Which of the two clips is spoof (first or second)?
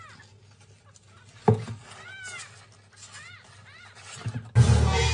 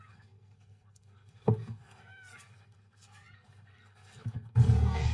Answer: second